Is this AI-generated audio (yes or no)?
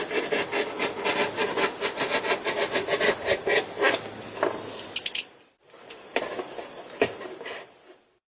no